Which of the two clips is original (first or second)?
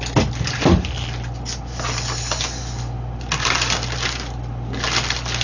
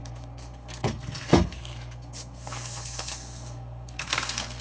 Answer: first